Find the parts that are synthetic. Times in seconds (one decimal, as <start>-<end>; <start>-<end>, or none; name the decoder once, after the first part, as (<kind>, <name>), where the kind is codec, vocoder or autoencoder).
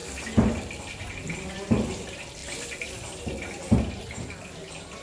none